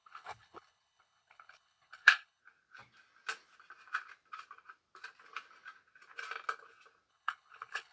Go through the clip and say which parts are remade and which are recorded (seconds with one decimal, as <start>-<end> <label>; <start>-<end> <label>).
0.0-2.4 remade; 2.4-7.1 recorded; 7.1-7.9 remade